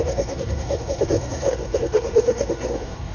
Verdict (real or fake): fake